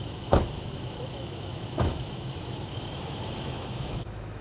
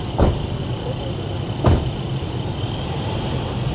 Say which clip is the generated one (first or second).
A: first